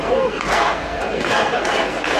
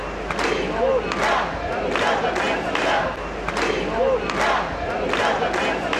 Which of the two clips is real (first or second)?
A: second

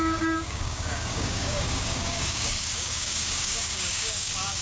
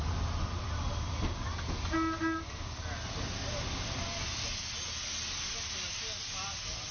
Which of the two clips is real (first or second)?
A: second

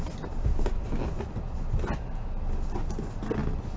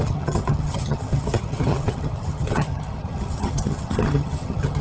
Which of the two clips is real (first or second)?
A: first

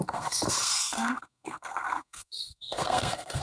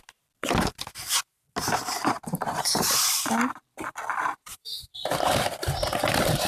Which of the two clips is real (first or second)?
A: second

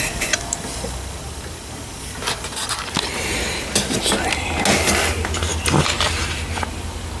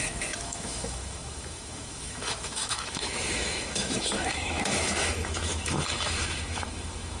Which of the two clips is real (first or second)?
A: first